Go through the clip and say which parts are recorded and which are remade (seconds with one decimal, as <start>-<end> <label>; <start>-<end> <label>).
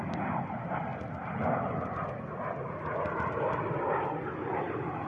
0.0-5.1 recorded